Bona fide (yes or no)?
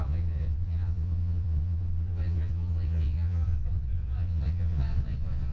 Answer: no